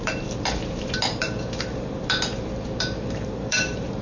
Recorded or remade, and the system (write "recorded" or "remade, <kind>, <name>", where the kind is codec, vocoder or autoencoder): remade, vocoder, BigVGAN v2